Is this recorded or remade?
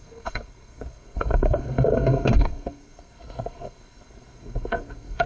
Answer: remade